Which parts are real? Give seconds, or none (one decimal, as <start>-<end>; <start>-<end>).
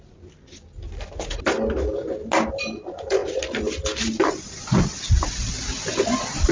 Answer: 0.0-6.5